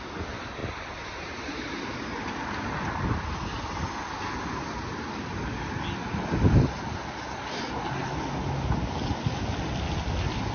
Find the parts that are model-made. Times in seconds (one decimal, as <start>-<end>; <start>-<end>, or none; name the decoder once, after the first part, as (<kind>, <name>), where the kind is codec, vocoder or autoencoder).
0.6-3.7 (vocoder, BigVGAN v2)